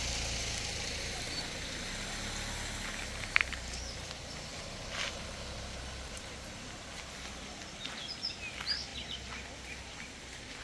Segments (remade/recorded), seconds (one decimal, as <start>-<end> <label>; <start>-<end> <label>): 0.0-4.5 recorded; 4.5-6.3 remade; 6.3-10.6 recorded